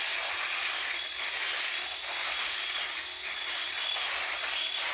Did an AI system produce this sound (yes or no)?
no